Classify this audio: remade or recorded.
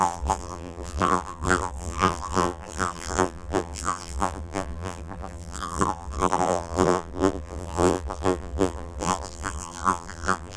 remade